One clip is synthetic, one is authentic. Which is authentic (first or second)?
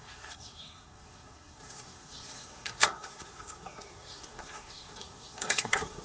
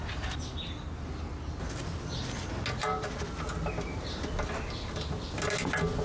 second